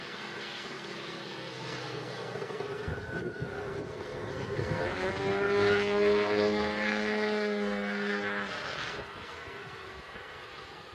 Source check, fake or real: fake